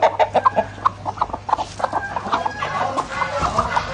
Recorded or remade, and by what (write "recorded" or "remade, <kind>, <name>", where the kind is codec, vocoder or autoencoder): recorded